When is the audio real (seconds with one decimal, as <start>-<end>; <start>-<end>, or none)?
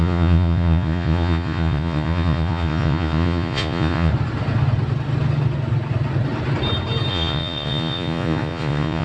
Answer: 4.1-7.1